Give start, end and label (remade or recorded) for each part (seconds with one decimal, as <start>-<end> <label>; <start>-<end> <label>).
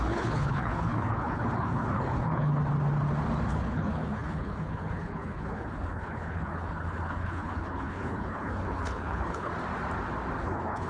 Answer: 0.0-2.6 remade; 2.6-3.5 recorded; 3.5-9.5 remade; 9.5-10.4 recorded; 10.4-10.9 remade